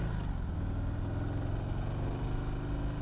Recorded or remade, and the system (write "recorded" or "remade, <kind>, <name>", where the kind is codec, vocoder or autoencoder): recorded